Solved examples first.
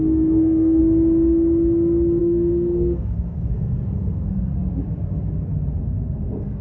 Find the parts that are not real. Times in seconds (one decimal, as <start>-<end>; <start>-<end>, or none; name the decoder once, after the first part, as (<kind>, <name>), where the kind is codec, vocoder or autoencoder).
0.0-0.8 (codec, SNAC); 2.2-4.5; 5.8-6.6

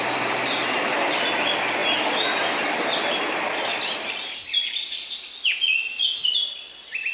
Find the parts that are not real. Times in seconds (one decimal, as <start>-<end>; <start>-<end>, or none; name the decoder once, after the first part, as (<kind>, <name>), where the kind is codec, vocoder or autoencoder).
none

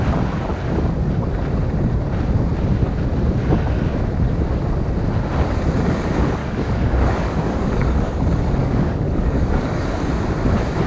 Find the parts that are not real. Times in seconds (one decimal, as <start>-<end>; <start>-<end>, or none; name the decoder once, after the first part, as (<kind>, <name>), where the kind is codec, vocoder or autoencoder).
6.4-8.2 (codec, DAC); 8.6-10.1

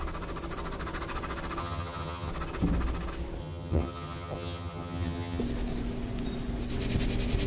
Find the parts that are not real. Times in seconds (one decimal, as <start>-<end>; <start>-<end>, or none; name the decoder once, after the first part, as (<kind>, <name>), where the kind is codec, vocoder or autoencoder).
1.6-2.3 (vocoder, HiFi-GAN); 3.4-5.4